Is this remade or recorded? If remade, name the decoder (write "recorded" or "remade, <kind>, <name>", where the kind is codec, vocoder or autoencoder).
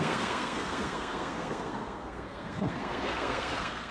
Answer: remade, codec, SNAC